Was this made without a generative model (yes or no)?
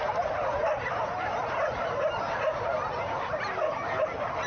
yes